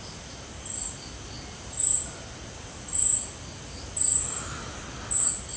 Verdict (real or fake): real